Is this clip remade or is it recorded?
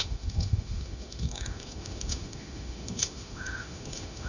remade